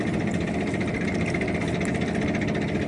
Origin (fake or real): real